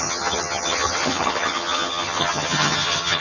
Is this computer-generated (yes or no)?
yes